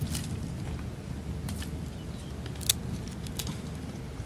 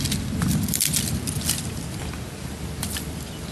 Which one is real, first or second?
first